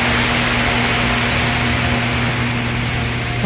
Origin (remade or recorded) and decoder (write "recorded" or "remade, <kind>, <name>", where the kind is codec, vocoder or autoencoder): recorded